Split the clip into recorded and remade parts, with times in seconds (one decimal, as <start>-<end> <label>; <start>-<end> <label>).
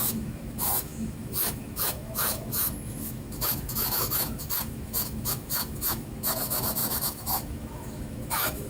0.0-8.7 remade